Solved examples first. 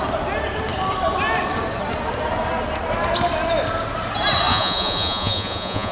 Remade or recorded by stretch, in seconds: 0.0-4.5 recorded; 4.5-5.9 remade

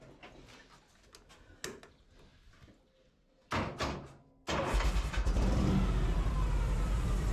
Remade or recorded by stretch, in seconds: 0.0-7.3 recorded